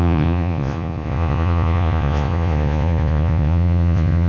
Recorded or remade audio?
remade